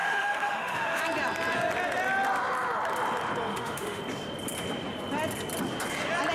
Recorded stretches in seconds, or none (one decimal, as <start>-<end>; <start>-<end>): 1.0-3.5; 4.0-6.3